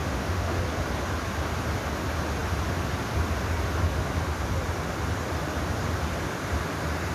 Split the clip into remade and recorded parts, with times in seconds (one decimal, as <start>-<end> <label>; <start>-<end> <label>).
0.0-0.6 remade; 0.6-7.1 recorded